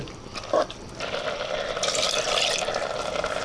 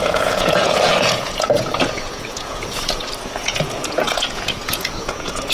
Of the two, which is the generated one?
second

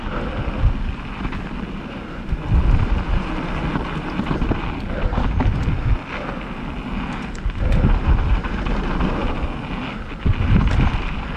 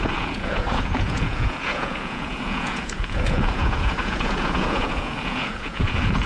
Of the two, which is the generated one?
second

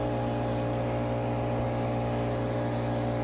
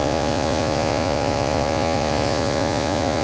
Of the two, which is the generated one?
second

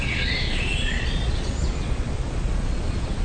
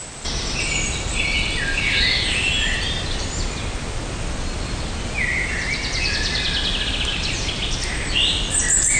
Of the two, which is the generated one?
first